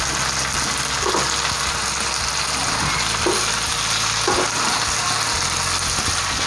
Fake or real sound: real